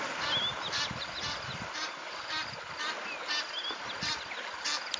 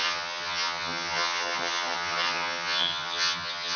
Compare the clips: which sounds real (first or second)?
first